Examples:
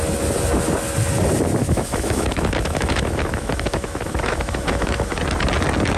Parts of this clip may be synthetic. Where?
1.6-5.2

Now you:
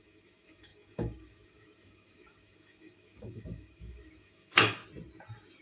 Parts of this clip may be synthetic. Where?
0.0-4.8

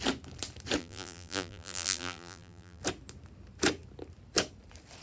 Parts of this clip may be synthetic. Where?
0.8-2.8

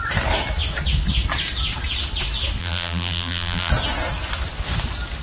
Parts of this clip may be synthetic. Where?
2.6-3.7